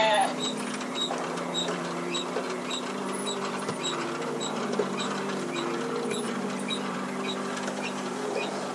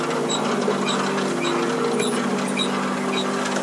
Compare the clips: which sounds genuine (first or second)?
second